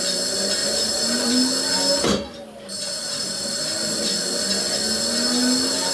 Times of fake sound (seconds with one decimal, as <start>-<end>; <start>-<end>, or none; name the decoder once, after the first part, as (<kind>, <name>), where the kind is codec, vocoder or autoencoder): 0.6-1.3 (vocoder, BigVGAN v2); 2.7-3.6